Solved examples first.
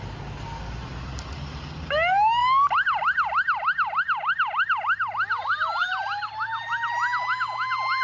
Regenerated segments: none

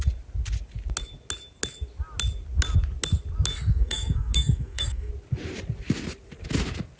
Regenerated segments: 3.5-5.1 (codec, SNAC)

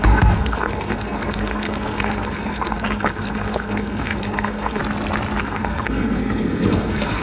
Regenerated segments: 0.0-4.8 (codec, SNAC); 5.4-7.2

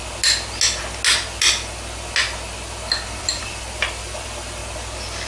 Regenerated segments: 3.2-4.6 (vocoder, BigVGAN v2)

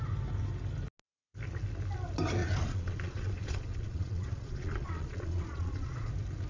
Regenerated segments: 2.4-6.1 (vocoder, Vocos)